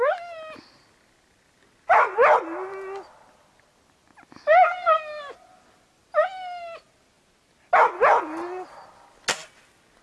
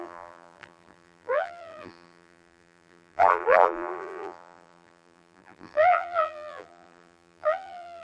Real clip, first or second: first